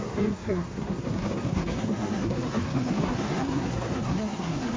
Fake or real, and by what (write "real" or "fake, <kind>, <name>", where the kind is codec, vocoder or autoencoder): fake, codec, SNAC